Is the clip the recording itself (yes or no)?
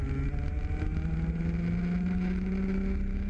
yes